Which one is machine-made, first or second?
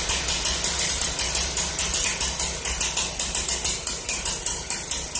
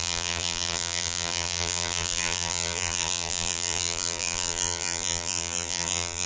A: second